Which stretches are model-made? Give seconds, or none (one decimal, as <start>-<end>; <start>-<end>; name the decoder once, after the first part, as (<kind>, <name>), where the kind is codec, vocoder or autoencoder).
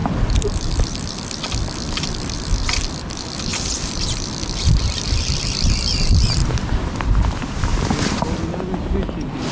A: 6.4-7.1 (vocoder, BigVGAN v2); 7.7-8.6